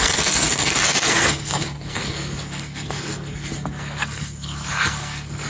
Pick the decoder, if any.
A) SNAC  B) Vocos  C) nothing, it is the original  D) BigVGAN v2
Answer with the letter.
A